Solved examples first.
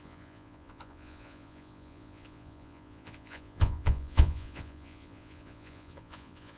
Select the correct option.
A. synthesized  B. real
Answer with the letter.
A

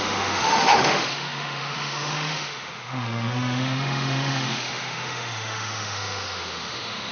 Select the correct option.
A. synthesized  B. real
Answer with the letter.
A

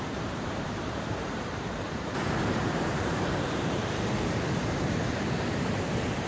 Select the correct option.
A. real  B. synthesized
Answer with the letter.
B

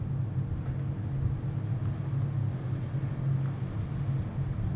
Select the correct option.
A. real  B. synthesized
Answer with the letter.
A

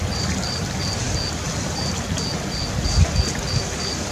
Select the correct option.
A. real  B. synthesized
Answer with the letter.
A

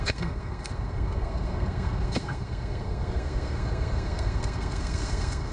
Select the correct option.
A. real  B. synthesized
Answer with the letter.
B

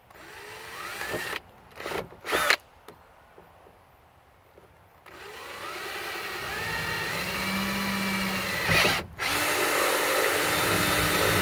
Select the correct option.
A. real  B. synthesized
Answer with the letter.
A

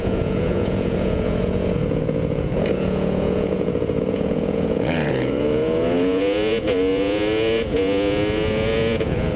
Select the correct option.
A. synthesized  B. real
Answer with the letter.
A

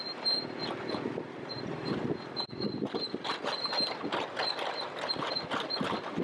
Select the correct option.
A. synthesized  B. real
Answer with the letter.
A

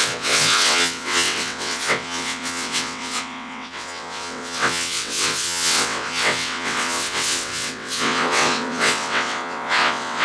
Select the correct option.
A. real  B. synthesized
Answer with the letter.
B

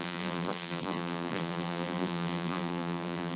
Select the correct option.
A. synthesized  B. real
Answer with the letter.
A